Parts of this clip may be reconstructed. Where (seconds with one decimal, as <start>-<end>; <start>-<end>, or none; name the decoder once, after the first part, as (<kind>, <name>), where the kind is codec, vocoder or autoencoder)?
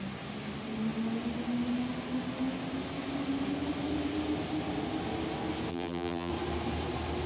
5.7-6.3 (vocoder, BigVGAN v2)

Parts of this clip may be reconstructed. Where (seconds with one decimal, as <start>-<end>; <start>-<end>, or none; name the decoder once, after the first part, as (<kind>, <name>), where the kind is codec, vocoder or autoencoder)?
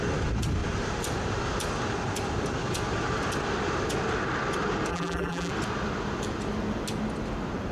4.9-5.5 (vocoder, BigVGAN v2)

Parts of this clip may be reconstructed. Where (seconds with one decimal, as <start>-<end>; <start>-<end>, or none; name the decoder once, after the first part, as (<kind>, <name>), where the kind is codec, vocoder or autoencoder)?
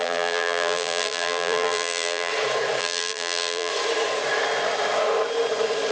0.0-2.3 (vocoder, BigVGAN v2); 2.8-3.7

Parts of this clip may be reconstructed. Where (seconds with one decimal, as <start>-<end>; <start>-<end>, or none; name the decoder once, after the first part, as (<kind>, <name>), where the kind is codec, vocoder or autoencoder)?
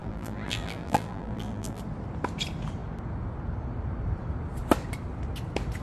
0.0-1.8 (vocoder, BigVGAN v2)